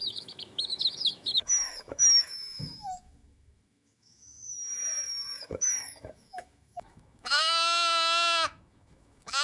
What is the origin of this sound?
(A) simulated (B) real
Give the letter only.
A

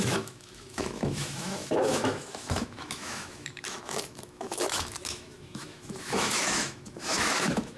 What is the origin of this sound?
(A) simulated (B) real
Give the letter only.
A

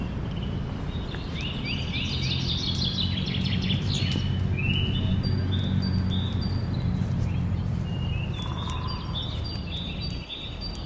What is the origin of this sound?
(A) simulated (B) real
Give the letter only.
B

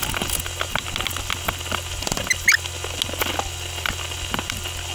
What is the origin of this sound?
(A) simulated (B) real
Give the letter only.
B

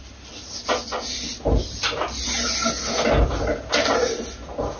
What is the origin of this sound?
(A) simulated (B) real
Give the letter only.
B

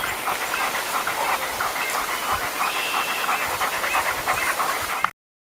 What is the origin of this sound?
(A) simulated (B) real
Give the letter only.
B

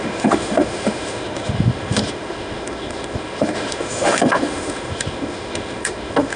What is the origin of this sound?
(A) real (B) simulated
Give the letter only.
B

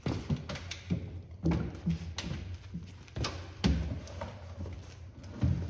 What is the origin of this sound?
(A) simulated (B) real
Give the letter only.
B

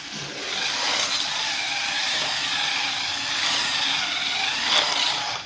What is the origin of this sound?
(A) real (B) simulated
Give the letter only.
A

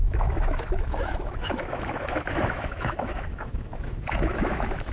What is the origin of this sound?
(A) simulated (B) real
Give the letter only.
A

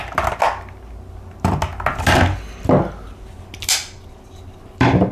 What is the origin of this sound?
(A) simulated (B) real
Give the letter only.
B